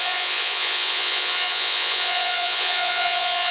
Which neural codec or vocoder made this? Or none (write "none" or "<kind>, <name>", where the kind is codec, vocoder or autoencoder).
vocoder, Vocos